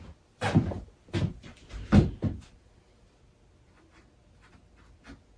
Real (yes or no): yes